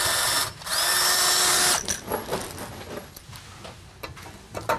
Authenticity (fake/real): real